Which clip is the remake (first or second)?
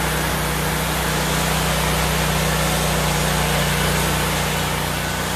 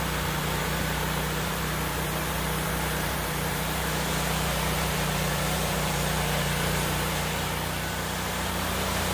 second